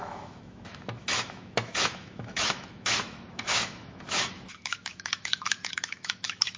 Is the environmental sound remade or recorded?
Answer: remade